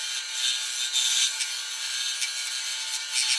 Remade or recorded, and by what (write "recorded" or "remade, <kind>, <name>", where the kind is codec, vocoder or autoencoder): recorded